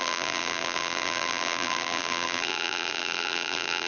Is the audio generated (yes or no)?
yes